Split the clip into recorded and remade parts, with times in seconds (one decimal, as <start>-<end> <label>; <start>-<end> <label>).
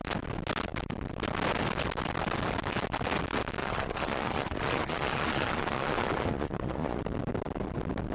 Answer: 0.0-3.6 recorded; 3.6-7.0 remade; 7.0-8.1 recorded